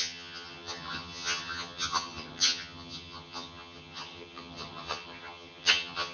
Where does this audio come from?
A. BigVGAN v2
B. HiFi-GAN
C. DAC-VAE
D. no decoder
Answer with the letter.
B